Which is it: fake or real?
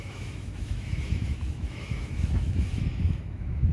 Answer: fake